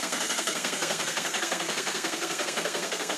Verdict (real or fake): fake